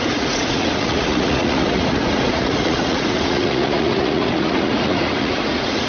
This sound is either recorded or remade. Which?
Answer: remade